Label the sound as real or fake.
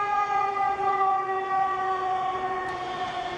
fake